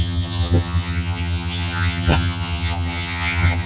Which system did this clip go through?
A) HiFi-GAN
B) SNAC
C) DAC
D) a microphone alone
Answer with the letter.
A